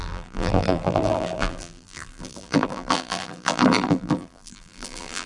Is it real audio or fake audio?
fake